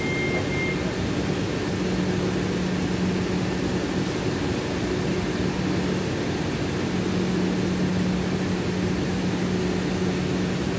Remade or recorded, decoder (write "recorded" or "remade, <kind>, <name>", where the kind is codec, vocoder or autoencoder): recorded